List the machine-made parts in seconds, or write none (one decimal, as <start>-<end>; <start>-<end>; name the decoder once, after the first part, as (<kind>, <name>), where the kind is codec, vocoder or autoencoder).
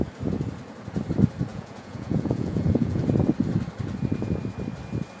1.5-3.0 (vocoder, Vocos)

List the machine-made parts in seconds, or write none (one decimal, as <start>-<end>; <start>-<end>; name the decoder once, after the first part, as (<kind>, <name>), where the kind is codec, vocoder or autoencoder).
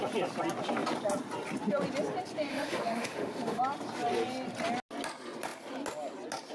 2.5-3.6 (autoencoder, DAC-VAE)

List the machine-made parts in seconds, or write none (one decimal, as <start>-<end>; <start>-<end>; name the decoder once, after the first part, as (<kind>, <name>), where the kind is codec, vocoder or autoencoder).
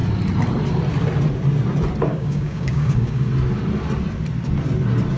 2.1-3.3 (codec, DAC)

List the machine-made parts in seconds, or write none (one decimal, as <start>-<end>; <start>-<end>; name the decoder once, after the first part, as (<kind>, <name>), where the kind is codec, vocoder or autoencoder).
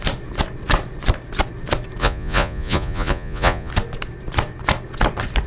2.0-3.7 (vocoder, Vocos)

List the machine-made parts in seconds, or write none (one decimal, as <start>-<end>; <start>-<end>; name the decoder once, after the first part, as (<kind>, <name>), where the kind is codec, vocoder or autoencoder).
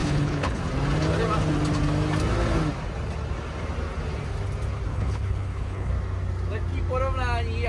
0.0-0.6 (codec, HILCodec); 4.9-5.9